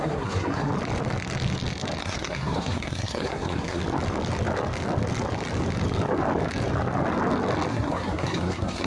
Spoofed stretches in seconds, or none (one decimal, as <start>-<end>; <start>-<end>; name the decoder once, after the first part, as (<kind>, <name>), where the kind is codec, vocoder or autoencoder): 0.0-0.7 (codec, SNAC); 2.0-3.8; 7.7-8.9